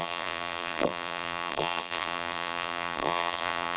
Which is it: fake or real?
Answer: fake